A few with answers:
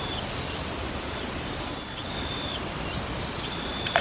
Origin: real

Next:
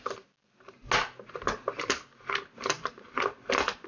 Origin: real